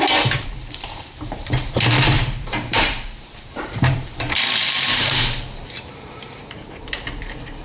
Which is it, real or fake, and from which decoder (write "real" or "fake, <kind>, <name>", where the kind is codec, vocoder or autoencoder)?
fake, vocoder, BigVGAN v2